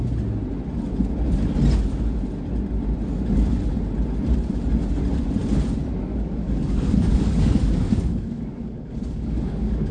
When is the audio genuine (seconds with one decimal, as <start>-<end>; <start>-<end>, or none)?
0.0-6.1